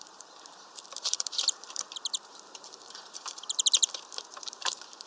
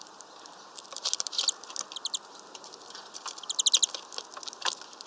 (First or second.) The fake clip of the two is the first